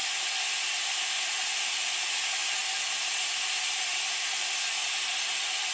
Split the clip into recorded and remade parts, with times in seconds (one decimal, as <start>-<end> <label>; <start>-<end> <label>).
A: 0.0-5.7 recorded

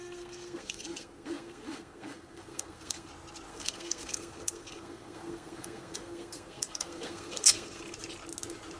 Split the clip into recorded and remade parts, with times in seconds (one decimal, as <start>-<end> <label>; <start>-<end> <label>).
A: 0.0-3.1 remade; 3.1-3.5 recorded; 3.5-7.8 remade; 7.8-8.8 recorded

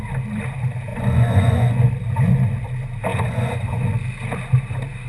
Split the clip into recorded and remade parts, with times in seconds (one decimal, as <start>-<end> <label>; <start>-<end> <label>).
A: 0.0-0.9 recorded; 0.9-1.9 remade; 1.9-3.1 recorded; 3.1-3.8 remade; 3.8-5.1 recorded